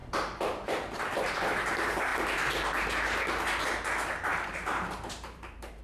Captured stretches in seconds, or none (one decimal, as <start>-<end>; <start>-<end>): 1.0-4.3